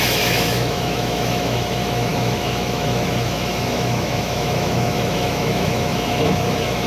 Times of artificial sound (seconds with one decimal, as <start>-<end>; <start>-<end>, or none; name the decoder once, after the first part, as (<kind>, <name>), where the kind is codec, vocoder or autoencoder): 0.0-6.9 (autoencoder, DAC-VAE)